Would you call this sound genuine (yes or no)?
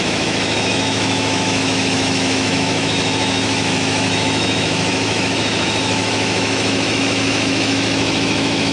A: no